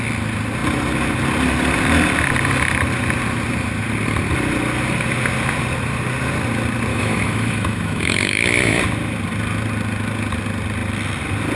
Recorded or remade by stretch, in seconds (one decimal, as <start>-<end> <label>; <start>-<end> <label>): 0.0-6.9 recorded; 6.9-8.8 remade; 8.8-11.6 recorded